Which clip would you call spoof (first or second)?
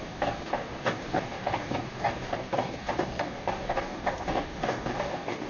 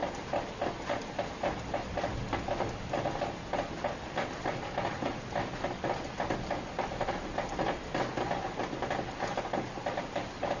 first